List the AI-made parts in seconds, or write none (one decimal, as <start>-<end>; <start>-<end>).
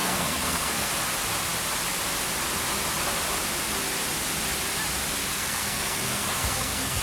0.0-0.9; 5.3-7.0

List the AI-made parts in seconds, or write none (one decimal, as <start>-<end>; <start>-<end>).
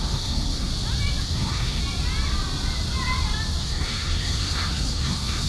0.0-0.7; 1.2-1.8; 3.6-5.5